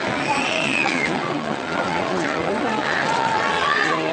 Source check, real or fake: fake